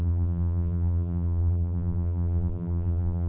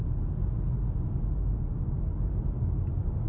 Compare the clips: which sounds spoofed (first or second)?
first